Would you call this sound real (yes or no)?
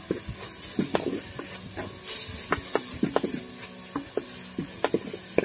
yes